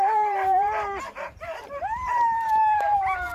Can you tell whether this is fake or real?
fake